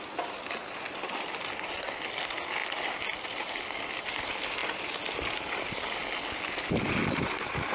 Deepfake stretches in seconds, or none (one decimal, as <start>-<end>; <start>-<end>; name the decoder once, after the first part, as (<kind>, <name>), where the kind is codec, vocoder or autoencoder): none